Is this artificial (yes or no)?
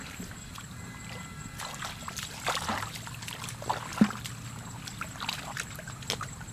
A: no